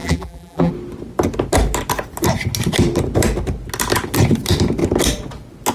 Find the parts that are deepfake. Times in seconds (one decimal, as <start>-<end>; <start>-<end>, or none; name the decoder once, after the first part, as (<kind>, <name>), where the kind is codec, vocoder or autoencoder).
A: 0.0-0.7 (vocoder, BigVGAN v2)